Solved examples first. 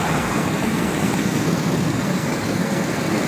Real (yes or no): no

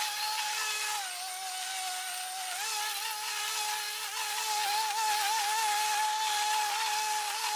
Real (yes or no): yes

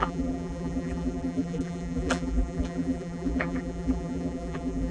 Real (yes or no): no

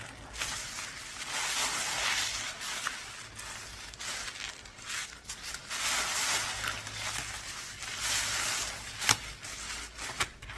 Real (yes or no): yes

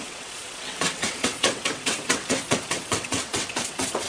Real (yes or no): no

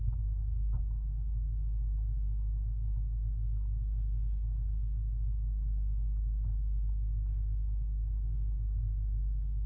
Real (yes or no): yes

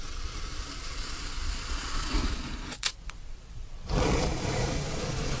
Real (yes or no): no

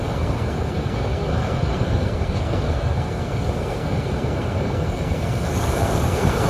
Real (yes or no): no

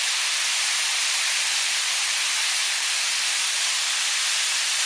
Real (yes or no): yes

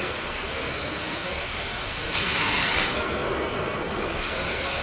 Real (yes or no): no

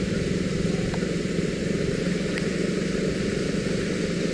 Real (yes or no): yes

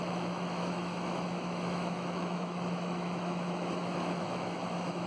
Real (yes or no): no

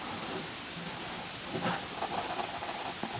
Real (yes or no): yes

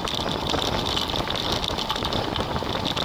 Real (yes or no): yes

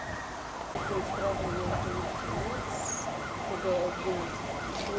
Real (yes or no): yes